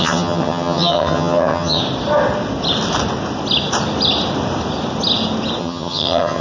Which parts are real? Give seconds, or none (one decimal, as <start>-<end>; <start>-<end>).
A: 1.8-5.6